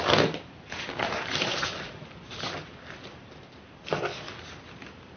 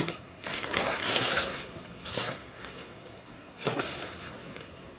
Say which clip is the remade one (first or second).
second